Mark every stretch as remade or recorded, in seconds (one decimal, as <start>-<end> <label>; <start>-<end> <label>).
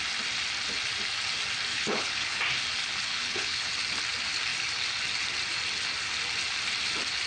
0.0-1.7 recorded; 1.7-2.4 remade; 2.4-3.1 recorded; 3.1-3.7 remade; 3.7-7.3 recorded